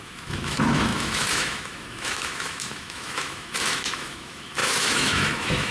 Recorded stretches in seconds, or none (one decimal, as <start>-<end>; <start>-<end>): none